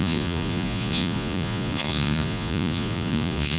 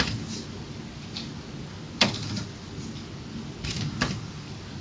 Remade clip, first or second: first